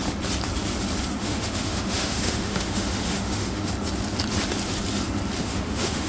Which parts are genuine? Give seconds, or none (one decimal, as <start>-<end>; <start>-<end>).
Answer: 0.0-1.2; 3.7-5.4